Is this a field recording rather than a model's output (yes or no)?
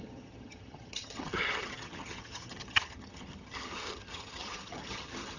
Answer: no